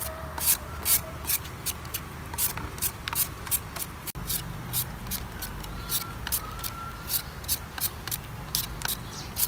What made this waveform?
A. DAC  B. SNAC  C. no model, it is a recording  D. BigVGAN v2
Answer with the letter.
C